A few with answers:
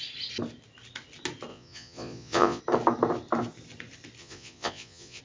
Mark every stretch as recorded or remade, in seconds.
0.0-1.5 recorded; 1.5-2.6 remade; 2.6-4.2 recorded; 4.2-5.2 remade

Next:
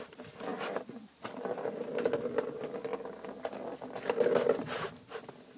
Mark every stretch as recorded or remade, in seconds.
0.0-5.6 recorded

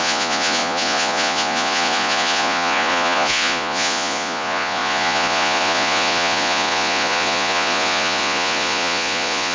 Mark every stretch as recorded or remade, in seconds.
0.0-9.5 remade

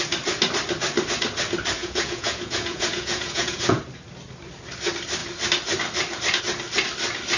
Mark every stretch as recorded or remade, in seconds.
0.0-1.8 recorded; 1.8-3.8 remade; 3.8-7.4 recorded

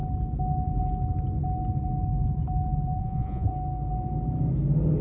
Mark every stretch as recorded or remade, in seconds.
0.0-3.0 recorded; 3.0-3.5 remade; 3.5-5.0 recorded

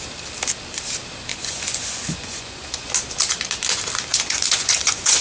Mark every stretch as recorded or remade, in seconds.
0.0-1.3 recorded; 1.3-2.9 remade; 2.9-4.1 recorded; 4.1-5.2 remade